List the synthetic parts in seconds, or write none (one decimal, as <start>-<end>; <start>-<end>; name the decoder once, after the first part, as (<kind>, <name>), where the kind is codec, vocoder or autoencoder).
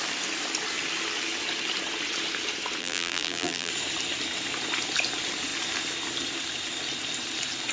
2.8-3.7 (vocoder, BigVGAN v2)